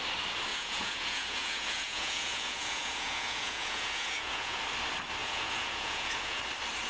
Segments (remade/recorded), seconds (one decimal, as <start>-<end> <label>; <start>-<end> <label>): 0.0-0.5 recorded; 0.5-4.6 remade; 4.6-5.2 recorded; 5.2-6.4 remade; 6.4-6.9 recorded